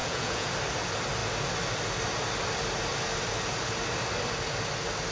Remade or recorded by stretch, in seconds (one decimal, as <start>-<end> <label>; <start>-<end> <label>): 0.0-0.5 remade; 0.5-5.1 recorded